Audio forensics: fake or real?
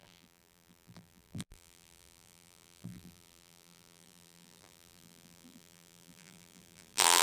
fake